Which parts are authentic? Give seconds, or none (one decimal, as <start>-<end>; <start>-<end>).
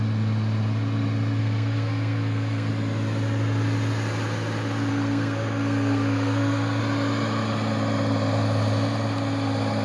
0.0-1.4; 2.7-4.9; 6.8-9.8